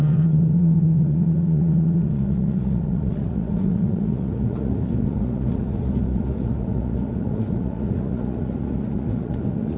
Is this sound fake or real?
fake